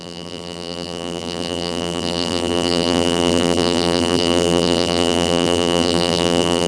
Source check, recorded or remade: remade